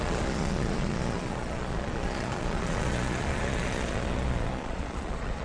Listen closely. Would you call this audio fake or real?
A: fake